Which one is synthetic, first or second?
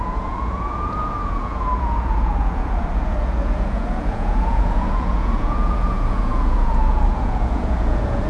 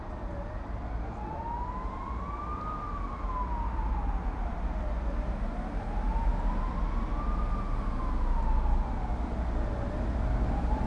first